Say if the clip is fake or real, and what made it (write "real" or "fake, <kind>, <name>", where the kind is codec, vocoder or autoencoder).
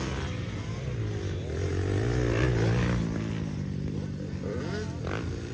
real